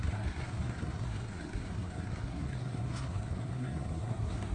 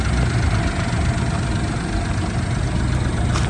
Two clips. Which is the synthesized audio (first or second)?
first